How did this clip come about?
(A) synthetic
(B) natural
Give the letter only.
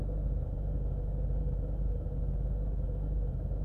B